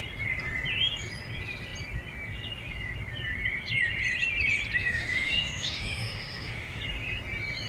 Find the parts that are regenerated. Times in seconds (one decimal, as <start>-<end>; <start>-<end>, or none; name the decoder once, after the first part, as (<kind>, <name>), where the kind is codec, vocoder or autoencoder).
4.8-6.8 (autoencoder, DAC-VAE)